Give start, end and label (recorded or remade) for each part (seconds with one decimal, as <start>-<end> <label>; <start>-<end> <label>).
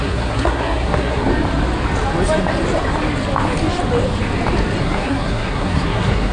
0.0-1.3 remade; 1.3-4.8 recorded; 4.8-6.3 remade